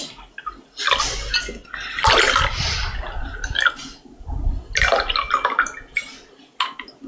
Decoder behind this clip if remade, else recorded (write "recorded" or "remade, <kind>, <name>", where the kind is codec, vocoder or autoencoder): recorded